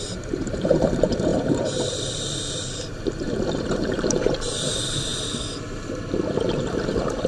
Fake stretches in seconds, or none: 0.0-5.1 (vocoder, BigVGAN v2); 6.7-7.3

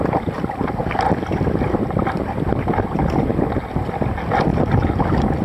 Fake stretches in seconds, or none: 4.5-5.0 (vocoder, BigVGAN v2)

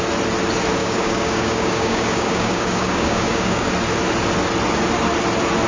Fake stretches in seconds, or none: 0.8-3.7 (codec, DAC)

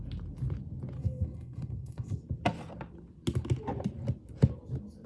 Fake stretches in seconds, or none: 1.0-2.2 (codec, SNAC)